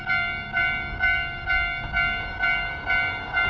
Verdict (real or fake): fake